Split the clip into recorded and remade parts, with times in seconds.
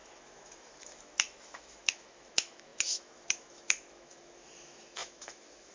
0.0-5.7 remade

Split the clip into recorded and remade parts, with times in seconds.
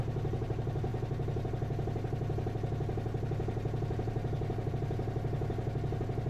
0.0-6.3 recorded